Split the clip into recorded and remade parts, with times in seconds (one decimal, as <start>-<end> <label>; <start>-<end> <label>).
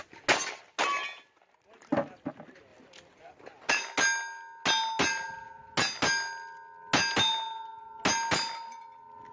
0.0-9.3 recorded